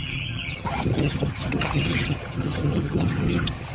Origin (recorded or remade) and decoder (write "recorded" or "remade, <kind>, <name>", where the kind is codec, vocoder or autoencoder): remade, vocoder, HiFi-GAN